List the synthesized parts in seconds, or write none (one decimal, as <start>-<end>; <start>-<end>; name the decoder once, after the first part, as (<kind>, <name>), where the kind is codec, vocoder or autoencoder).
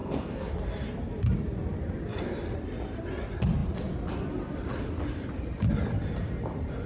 0.0-0.5 (codec, SNAC)